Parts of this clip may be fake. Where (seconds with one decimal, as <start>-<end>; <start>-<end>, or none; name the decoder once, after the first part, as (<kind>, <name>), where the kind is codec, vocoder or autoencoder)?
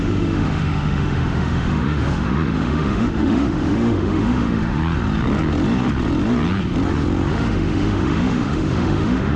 0.0-4.8 (autoencoder, DAC-VAE); 7.3-9.4